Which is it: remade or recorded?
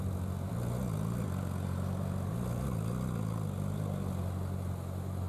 recorded